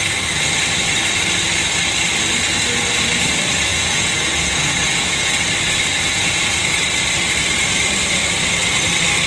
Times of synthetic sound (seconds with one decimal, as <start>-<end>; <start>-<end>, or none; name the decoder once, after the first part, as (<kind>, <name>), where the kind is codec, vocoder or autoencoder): 3.7-5.4 (vocoder, Vocos); 6.1-6.8